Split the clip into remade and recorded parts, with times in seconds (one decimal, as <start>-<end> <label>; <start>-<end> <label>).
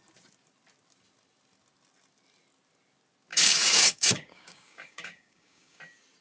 0.0-3.3 recorded; 3.3-5.8 remade; 5.8-6.2 recorded